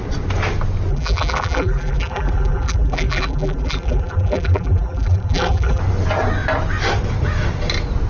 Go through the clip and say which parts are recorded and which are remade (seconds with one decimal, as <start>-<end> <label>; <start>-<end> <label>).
0.0-0.9 recorded; 0.9-5.8 remade; 5.8-8.1 recorded